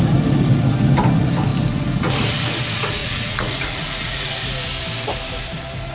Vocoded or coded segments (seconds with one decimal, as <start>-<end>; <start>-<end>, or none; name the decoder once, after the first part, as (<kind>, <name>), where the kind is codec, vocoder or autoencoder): 3.0-4.4 (vocoder, Vocos)